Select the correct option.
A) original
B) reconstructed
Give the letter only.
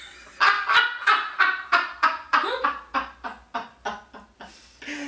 A